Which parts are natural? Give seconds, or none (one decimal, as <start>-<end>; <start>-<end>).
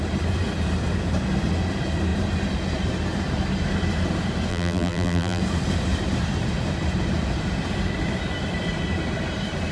0.0-4.5; 5.4-9.7